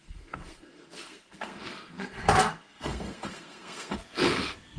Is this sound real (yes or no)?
no